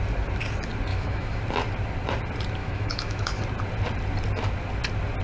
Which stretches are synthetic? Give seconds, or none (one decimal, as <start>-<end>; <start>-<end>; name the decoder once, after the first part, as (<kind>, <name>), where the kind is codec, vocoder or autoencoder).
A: 0.9-1.4 (autoencoder, DAC-VAE); 2.6-3.4